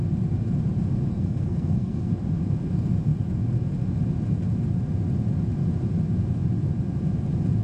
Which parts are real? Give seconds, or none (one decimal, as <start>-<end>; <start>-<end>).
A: 0.0-1.1; 2.1-7.6